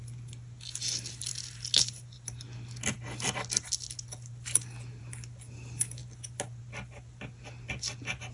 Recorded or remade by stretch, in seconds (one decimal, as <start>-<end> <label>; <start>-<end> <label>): 0.0-8.3 recorded

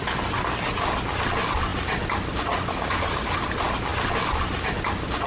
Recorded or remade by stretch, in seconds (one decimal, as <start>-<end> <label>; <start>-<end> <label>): 0.0-5.3 recorded

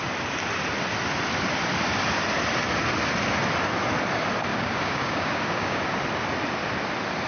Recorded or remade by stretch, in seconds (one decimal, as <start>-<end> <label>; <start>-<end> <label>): 0.0-4.5 recorded; 4.5-5.8 remade; 5.8-7.3 recorded

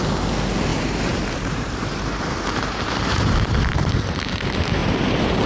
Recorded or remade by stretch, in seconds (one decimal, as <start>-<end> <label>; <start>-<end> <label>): 0.0-0.7 recorded; 0.7-3.9 remade; 3.9-4.8 recorded; 4.8-5.5 remade